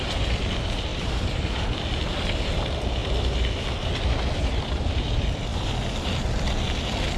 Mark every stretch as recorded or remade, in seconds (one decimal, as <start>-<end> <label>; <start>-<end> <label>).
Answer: 0.0-0.9 recorded; 0.9-1.4 remade; 1.4-7.2 recorded